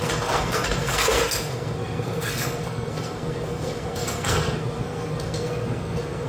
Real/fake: fake